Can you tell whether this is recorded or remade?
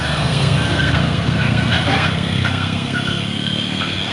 remade